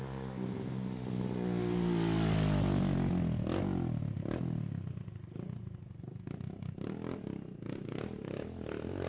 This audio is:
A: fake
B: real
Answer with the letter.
B